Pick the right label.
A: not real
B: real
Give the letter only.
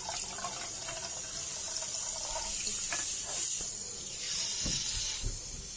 B